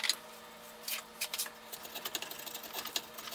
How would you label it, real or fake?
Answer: real